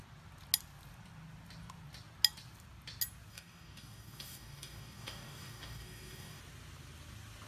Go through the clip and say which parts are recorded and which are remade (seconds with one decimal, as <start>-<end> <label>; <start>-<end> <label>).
0.0-3.3 recorded; 3.3-6.4 remade; 6.4-7.5 recorded